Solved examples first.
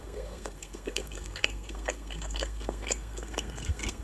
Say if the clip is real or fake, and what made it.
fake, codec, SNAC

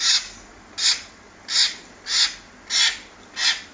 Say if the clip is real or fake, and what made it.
real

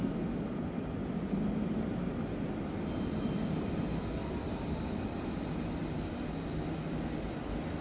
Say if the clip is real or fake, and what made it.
real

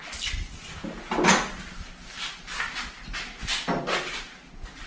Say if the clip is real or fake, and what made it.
real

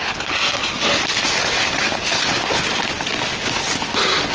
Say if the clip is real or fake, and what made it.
real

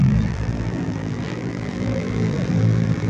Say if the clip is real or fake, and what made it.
fake, vocoder, BigVGAN v2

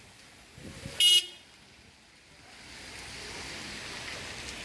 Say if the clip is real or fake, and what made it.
real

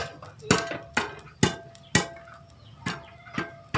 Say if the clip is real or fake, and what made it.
real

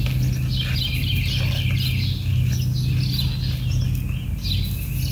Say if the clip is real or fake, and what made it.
real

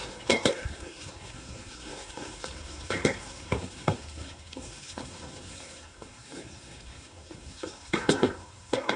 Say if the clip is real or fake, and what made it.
fake, codec, SNAC